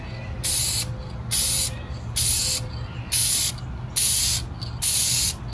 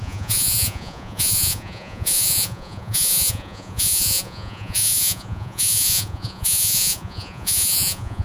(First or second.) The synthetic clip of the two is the second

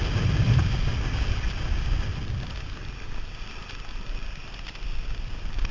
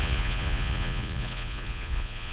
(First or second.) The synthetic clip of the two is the second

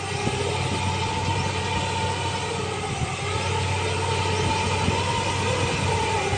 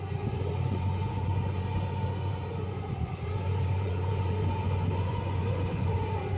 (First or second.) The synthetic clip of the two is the second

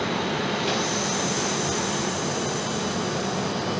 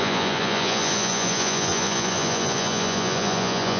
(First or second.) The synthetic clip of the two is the second